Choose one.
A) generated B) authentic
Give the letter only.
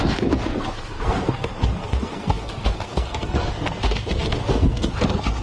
A